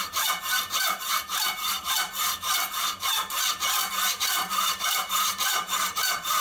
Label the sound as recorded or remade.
remade